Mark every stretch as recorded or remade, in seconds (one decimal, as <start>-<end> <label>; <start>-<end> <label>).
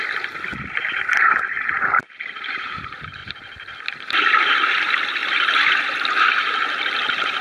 0.0-3.2 recorded; 3.2-4.5 remade; 4.5-5.2 recorded; 5.2-6.2 remade; 6.2-7.4 recorded